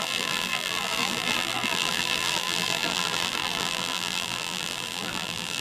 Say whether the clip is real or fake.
fake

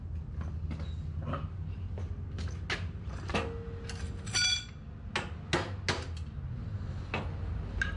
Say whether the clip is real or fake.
real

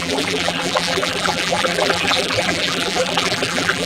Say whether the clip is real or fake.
fake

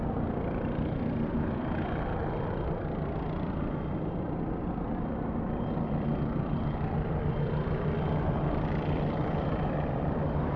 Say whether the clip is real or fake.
fake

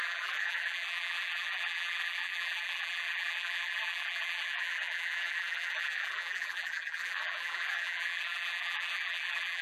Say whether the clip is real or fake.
fake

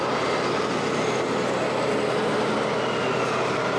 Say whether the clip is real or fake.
real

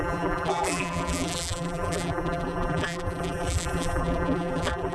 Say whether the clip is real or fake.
fake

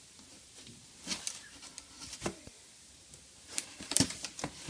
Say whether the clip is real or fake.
fake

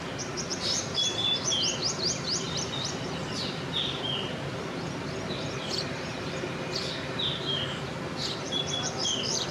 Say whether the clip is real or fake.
fake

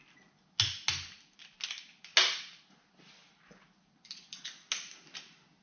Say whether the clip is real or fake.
real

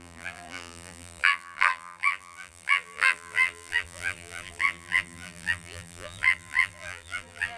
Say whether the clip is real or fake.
fake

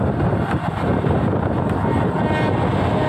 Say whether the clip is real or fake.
real